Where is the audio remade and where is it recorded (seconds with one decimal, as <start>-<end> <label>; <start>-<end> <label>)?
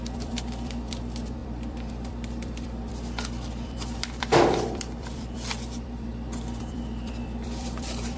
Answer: 0.0-2.9 remade; 2.9-3.5 recorded; 3.5-6.1 remade; 6.1-6.6 recorded; 6.6-8.2 remade